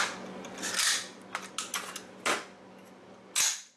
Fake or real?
real